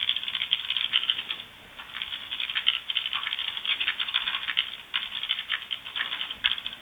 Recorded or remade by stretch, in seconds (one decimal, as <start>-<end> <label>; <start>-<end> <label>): 0.0-3.4 recorded; 3.4-4.0 remade; 4.0-6.8 recorded

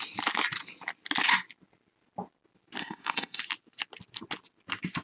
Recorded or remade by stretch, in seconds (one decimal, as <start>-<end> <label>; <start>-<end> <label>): 0.0-2.8 recorded; 2.8-3.4 remade; 3.4-5.0 recorded

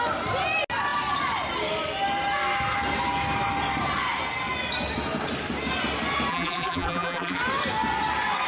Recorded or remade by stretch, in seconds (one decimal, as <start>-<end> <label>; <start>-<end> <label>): 0.0-6.3 recorded; 6.3-7.4 remade; 7.4-8.5 recorded

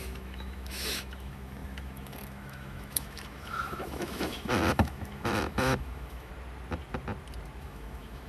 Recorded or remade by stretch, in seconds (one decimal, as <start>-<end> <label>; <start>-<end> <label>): 0.0-6.3 remade; 6.3-7.6 recorded; 7.6-8.3 remade

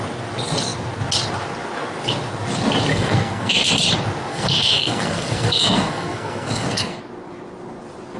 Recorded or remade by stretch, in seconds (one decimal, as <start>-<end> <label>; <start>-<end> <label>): 0.0-2.9 recorded; 2.9-3.7 remade; 3.7-4.3 recorded; 4.3-7.0 remade; 7.0-8.2 recorded

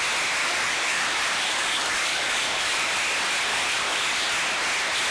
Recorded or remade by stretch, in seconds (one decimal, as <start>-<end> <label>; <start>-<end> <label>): 0.0-0.4 recorded; 0.4-2.9 remade; 2.9-3.5 recorded; 3.5-4.3 remade; 4.3-5.1 recorded